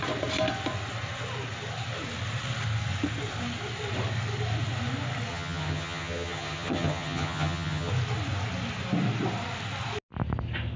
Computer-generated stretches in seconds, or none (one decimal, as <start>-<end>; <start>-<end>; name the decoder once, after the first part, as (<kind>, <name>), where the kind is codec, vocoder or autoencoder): 5.3-7.9 (vocoder, HiFi-GAN)

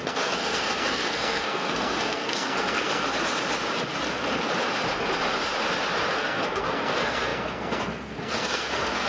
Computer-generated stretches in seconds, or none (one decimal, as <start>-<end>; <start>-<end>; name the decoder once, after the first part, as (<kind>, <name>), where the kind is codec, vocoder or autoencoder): 0.0-3.1 (codec, SNAC); 6.1-9.1

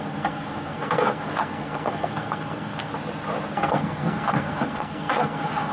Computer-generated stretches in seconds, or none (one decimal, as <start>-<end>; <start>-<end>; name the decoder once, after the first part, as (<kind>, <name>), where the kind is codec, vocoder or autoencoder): 0.0-2.9 (codec, SNAC); 3.5-5.7